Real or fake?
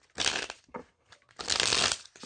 real